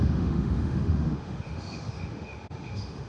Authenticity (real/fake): fake